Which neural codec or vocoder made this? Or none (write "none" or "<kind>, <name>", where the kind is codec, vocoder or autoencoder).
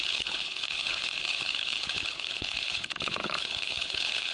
codec, HILCodec